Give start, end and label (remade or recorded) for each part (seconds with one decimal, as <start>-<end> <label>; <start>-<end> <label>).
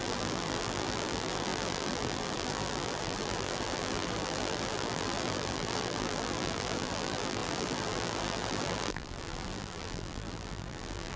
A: 0.0-11.2 remade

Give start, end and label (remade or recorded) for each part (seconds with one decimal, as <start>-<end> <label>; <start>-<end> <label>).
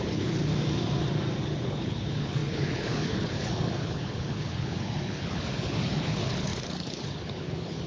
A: 0.0-0.5 remade; 0.5-1.4 recorded; 1.4-7.9 remade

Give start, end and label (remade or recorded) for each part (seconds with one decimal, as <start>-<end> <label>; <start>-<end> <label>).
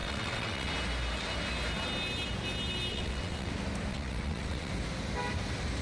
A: 0.0-0.7 remade; 0.7-2.9 recorded; 2.9-3.5 remade; 3.5-3.9 recorded; 3.9-4.7 remade; 4.7-5.8 recorded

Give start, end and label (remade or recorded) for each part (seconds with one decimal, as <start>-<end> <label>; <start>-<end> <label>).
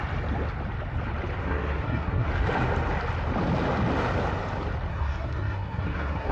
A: 0.0-1.4 recorded; 1.4-2.3 remade; 2.3-4.9 recorded; 4.9-6.3 remade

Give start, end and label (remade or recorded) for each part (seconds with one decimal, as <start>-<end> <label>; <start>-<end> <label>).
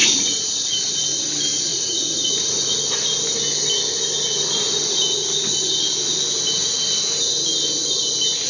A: 0.0-1.7 recorded; 1.7-2.8 remade; 2.8-8.5 recorded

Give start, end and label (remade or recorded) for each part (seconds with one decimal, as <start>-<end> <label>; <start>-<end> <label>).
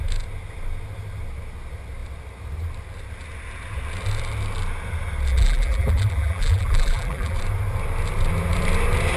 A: 0.0-5.3 recorded; 5.3-7.4 remade; 7.4-9.2 recorded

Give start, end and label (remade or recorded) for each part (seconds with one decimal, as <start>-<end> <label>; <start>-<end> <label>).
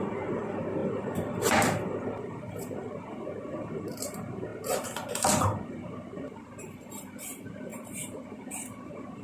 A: 0.0-9.2 remade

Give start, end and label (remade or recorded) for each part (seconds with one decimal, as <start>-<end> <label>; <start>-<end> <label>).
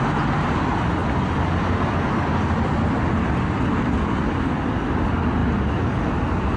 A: 0.0-6.6 recorded